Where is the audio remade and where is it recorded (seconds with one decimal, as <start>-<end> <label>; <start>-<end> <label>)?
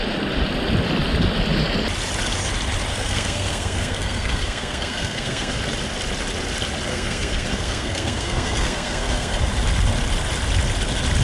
0.0-2.9 recorded; 2.9-5.6 remade; 5.6-6.9 recorded; 6.9-9.4 remade; 9.4-11.2 recorded